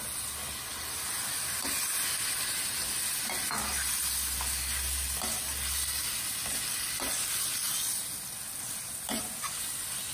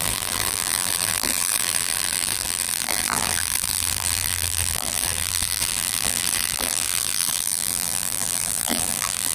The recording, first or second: first